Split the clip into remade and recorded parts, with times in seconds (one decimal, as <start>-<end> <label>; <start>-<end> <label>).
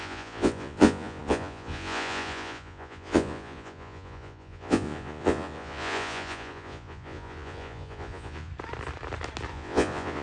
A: 0.0-8.5 remade; 8.5-9.5 recorded; 9.5-10.2 remade